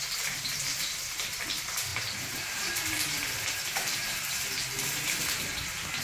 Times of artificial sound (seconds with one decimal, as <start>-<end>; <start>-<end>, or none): 1.9-5.5